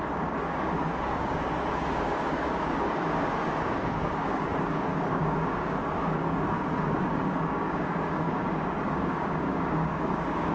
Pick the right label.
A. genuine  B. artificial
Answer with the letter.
B